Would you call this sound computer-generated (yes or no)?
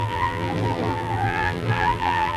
yes